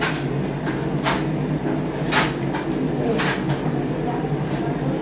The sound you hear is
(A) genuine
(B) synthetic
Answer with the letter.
A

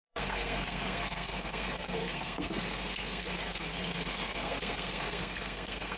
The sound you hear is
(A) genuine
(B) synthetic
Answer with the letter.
B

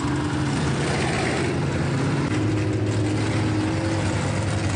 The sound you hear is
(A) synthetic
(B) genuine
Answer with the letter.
B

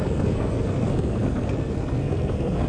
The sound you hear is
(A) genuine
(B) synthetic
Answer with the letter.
B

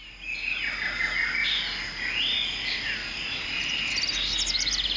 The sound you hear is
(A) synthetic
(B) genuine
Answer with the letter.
B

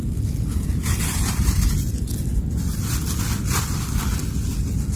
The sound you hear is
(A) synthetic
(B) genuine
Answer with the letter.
B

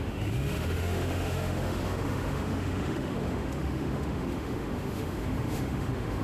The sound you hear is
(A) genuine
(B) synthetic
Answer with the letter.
B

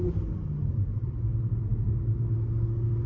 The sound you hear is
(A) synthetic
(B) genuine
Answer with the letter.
B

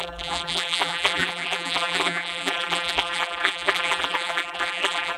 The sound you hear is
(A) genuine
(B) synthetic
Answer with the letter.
B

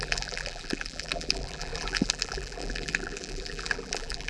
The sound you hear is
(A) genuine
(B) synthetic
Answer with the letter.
B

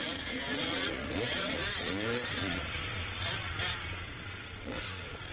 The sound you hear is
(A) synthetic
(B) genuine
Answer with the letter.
A